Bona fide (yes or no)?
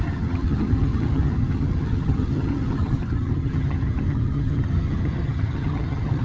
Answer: no